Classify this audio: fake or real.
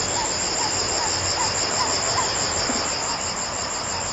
real